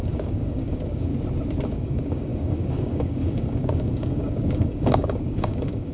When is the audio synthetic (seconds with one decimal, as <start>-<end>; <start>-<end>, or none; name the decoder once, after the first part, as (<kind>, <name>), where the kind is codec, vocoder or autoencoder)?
0.0-1.1 (codec, DAC); 1.7-5.9